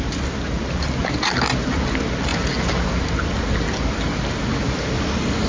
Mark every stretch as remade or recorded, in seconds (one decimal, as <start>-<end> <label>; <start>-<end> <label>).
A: 0.0-5.5 recorded